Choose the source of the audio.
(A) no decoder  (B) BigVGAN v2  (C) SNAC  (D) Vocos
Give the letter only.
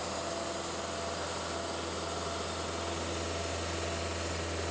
A